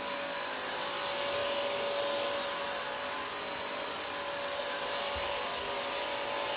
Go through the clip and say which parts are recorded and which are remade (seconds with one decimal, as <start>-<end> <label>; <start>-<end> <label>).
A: 0.0-6.6 recorded